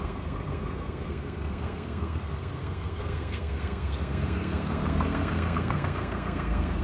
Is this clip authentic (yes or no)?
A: no